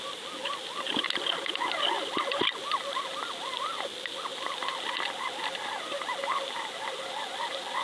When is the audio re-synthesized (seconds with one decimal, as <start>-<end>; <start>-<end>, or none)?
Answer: none